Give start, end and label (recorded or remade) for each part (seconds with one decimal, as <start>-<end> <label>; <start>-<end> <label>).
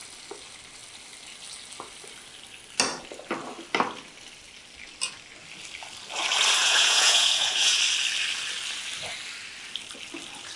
0.0-6.6 recorded; 6.6-7.8 remade; 7.8-10.6 recorded